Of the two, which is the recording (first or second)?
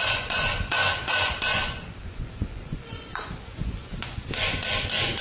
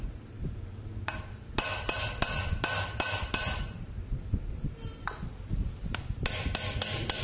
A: second